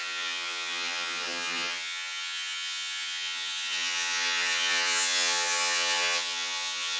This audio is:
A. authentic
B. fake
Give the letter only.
B